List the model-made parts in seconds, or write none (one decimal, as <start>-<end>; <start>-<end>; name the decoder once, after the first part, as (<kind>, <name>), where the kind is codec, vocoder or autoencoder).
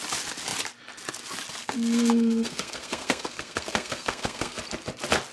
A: 1.6-4.6 (codec, SNAC)